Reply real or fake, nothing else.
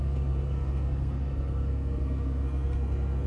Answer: fake